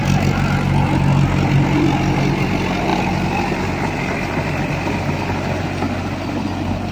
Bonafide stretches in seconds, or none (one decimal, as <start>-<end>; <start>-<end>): 0.0-6.9